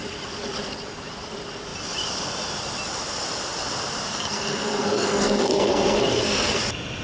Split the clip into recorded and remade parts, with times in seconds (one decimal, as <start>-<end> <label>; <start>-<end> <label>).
0.0-4.1 recorded; 4.1-6.6 remade; 6.6-7.0 recorded